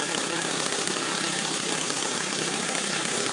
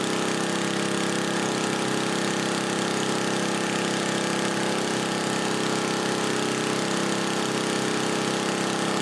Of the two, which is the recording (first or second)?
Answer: second